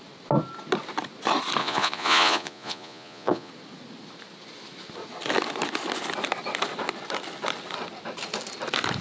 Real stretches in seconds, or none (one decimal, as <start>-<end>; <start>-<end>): 0.0-1.6; 3.5-9.0

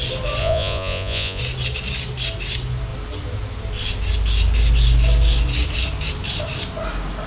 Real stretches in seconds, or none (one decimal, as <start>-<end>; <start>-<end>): 0.0-0.4; 1.4-7.3